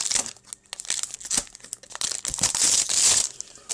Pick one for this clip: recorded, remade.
recorded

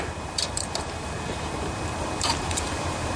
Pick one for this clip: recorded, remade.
remade